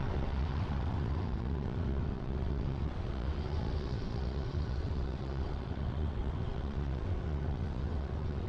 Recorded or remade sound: remade